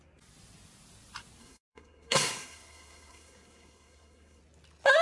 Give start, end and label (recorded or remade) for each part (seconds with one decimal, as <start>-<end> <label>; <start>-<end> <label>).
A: 0.0-1.4 recorded; 1.4-4.4 remade; 4.4-5.0 recorded